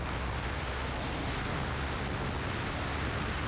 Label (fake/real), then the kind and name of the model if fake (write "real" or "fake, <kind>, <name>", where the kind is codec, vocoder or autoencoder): real